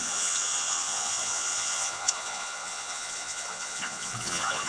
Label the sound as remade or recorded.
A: remade